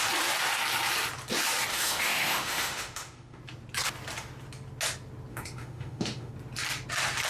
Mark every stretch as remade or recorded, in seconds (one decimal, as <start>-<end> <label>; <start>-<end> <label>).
0.0-1.7 recorded; 1.7-3.4 remade; 3.4-5.3 recorded; 5.3-6.3 remade; 6.3-7.3 recorded